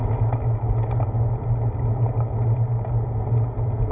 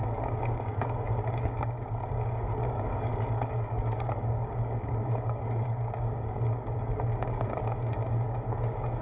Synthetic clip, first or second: second